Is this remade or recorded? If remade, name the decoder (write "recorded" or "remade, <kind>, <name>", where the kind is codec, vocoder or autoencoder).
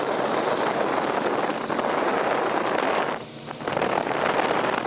recorded